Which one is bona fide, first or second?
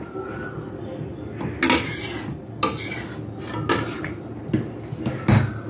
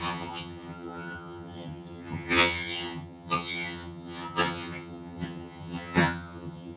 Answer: first